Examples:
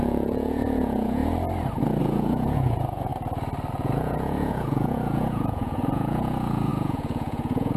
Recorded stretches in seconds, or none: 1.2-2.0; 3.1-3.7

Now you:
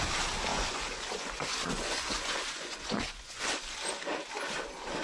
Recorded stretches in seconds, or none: 0.0-0.5; 3.5-5.0

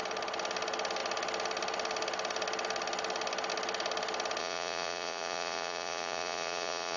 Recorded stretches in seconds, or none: 0.0-4.4

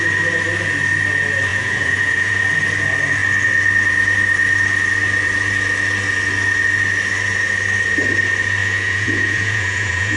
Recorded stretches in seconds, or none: 0.0-1.5; 2.3-8.6

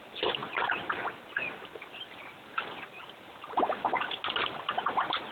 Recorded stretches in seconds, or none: 0.0-5.3

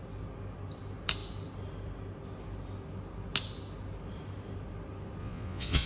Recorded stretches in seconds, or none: 0.0-5.2

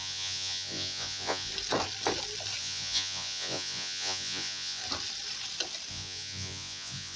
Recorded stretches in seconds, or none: 1.5-2.6; 4.8-5.9

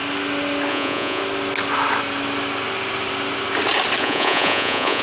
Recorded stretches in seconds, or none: 0.0-0.7; 1.2-4.0